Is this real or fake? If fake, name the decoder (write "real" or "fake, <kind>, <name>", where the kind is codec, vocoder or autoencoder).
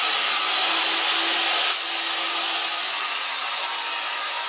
real